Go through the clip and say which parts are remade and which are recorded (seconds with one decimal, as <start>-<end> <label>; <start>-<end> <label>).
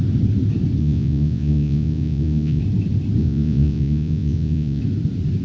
0.0-0.8 recorded; 0.8-2.6 remade; 2.6-3.2 recorded; 3.2-4.8 remade; 4.8-5.4 recorded